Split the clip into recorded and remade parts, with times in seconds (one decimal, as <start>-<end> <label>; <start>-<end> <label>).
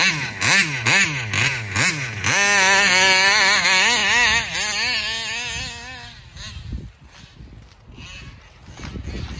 0.0-9.4 recorded